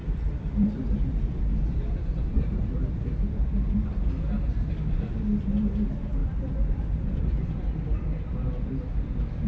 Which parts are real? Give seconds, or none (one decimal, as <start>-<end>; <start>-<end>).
5.1-6.2; 8.9-9.5